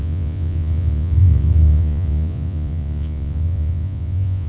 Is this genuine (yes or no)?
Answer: no